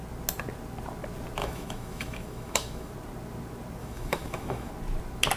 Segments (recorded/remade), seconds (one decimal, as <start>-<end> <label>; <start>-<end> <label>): 0.0-1.4 recorded; 1.4-2.9 remade; 2.9-3.8 recorded; 3.8-4.7 remade; 4.7-5.4 recorded